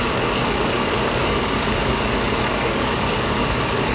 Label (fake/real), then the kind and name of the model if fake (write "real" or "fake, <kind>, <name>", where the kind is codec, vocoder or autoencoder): fake, codec, DAC